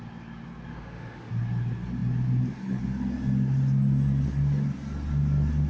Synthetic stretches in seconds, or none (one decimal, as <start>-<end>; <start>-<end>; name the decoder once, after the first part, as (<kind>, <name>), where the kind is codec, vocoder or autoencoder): 0.7-1.3 (autoencoder, DAC-VAE)